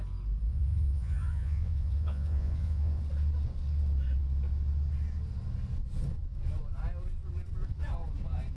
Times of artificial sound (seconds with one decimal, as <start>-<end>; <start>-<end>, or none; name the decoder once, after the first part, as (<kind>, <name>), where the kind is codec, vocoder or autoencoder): 0.5-3.0 (vocoder, Vocos)